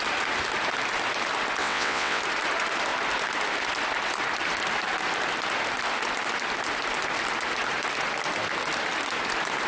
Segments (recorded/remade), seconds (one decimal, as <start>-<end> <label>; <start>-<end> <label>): 0.0-1.6 recorded; 1.6-2.2 remade; 2.2-9.7 recorded